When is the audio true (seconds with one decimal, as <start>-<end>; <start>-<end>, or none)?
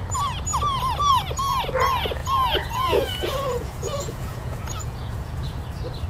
0.0-2.2; 5.6-6.1